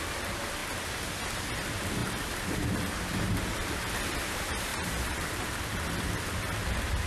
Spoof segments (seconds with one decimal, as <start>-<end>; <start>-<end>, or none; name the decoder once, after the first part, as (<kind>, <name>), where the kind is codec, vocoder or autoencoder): 2.0-4.2 (vocoder, BigVGAN v2); 4.7-5.4